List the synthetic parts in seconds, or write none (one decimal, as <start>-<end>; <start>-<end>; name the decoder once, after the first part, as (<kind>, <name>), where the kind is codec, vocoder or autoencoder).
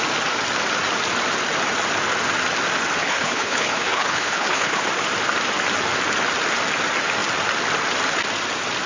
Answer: 3.0-4.8 (codec, HILCodec)